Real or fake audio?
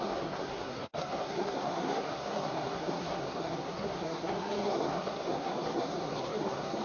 fake